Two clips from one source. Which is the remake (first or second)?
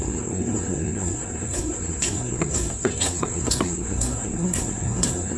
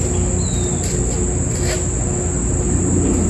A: first